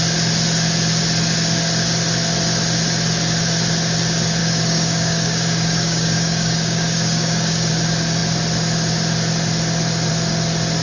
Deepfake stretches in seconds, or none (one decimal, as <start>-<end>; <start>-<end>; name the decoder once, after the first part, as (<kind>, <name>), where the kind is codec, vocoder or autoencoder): 4.4-7.7 (codec, DAC)